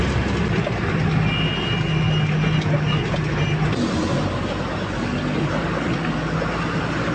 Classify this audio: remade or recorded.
recorded